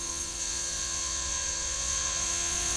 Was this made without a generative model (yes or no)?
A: no